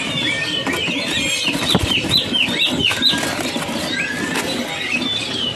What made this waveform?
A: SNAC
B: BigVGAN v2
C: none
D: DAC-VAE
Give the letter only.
C